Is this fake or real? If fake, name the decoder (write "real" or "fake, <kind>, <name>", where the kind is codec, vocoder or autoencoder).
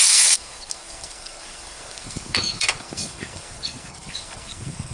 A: fake, codec, SNAC